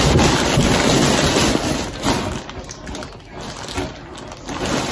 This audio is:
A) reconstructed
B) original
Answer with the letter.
B